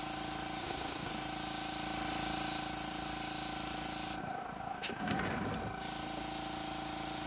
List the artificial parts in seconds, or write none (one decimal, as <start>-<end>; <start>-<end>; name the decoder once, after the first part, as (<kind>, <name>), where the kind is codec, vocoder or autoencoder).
0.6-1.1 (codec, SNAC); 4.2-5.2